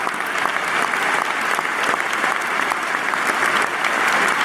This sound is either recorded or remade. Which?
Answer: recorded